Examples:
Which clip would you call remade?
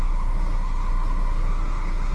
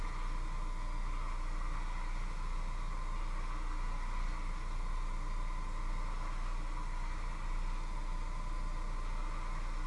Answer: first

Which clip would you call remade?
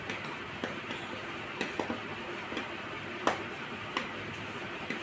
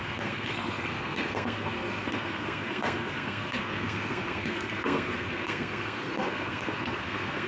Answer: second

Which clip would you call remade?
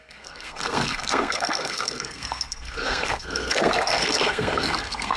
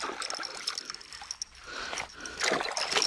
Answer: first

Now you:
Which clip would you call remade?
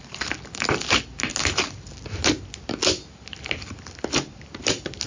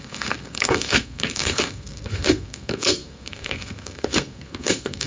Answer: second